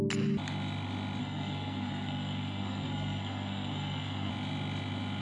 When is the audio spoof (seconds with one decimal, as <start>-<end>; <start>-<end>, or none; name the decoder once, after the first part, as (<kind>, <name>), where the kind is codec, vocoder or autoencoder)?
1.2-4.3 (codec, SNAC)